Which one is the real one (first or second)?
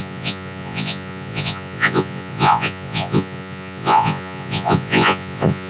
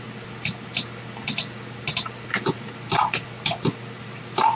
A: second